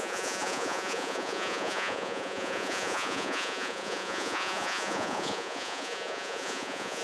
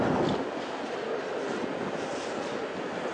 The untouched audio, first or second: second